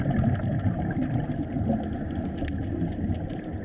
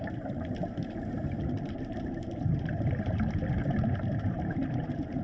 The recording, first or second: first